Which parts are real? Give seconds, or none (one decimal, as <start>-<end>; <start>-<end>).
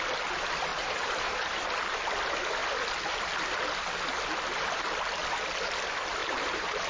0.0-0.7; 1.5-6.2